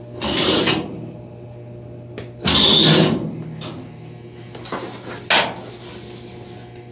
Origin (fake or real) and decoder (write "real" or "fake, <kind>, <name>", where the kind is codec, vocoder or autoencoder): real